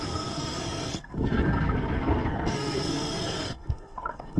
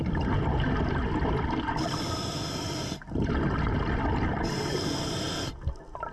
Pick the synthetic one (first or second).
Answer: first